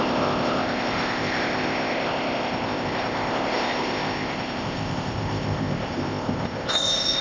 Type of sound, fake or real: fake